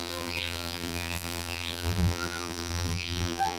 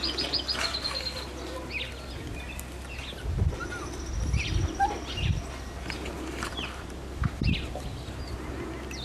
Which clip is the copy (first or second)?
first